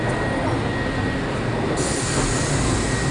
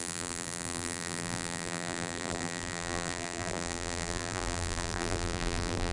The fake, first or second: second